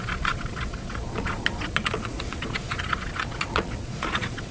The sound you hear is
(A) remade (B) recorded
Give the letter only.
A